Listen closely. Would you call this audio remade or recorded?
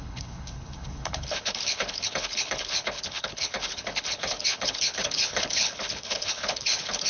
remade